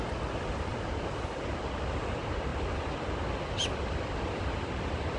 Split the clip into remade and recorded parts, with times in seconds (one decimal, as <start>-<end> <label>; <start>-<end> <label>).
0.0-5.2 recorded